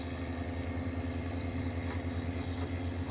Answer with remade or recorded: recorded